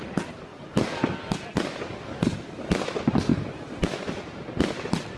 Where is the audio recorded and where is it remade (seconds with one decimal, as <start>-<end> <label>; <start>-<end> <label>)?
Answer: 0.0-5.2 recorded

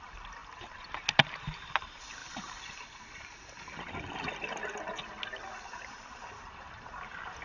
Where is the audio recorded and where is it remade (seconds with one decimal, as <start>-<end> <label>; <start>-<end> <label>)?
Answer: 0.0-2.2 recorded; 2.2-3.5 remade; 3.5-5.7 recorded; 5.7-6.9 remade; 6.9-7.4 recorded

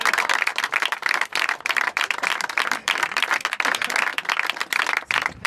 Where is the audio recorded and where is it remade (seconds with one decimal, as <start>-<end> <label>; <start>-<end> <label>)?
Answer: 0.0-0.5 recorded; 0.5-3.3 remade; 3.3-4.1 recorded; 4.1-5.5 remade

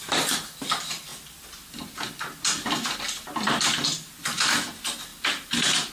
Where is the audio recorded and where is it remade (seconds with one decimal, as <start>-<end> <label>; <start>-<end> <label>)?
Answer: 0.0-5.1 recorded; 5.1-5.9 remade

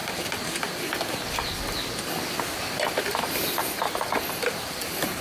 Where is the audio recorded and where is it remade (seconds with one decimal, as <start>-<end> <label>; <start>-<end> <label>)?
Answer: 0.0-3.0 recorded; 3.0-3.6 remade; 3.6-4.3 recorded; 4.3-5.2 remade

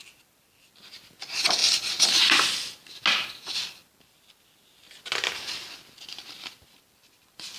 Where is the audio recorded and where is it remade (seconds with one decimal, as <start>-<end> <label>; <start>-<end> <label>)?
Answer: 0.0-7.6 recorded